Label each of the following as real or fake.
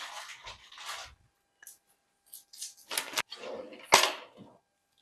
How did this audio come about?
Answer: real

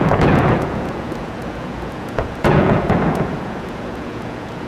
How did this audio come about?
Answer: fake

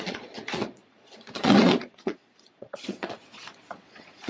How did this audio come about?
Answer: fake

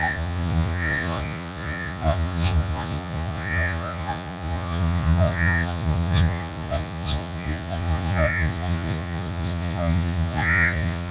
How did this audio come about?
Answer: fake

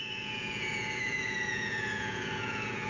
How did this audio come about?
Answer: fake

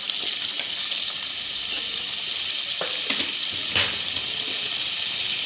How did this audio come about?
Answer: real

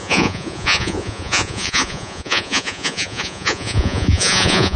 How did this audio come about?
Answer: fake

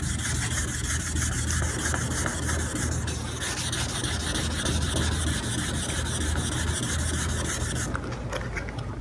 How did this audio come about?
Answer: real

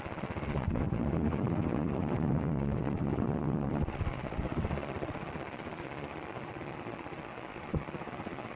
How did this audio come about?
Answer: fake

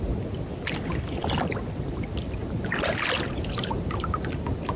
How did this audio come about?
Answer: real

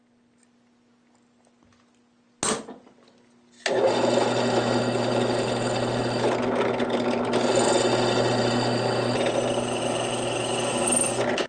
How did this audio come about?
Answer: real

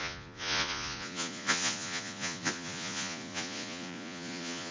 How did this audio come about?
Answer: fake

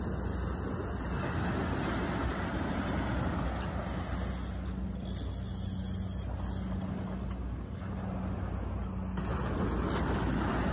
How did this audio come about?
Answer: real